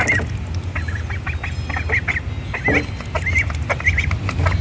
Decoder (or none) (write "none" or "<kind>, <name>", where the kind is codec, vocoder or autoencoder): none